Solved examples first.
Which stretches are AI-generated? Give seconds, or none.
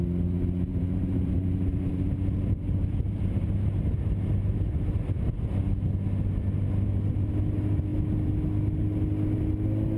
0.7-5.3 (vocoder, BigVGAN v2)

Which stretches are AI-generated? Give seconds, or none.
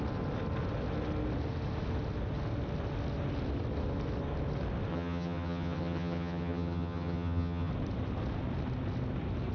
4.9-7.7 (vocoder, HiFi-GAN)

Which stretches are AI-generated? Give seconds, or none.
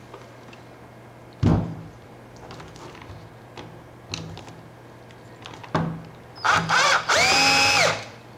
1.5-2.1 (vocoder, BigVGAN v2); 6.6-7.3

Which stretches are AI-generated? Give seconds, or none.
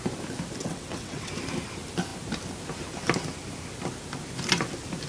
0.6-1.3 (vocoder, WaveNeXt)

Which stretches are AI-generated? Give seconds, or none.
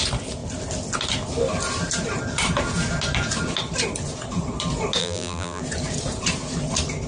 5.0-5.6 (vocoder, BigVGAN v2)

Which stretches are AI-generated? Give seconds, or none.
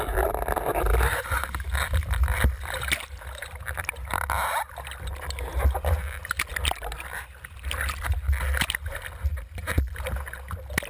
none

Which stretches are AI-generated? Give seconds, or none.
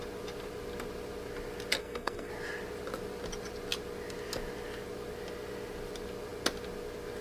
1.8-2.3 (codec, SNAC)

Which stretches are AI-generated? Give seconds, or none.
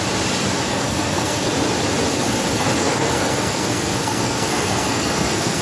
0.7-1.5 (codec, SNAC); 2.1-5.6